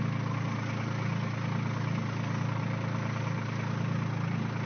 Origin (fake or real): real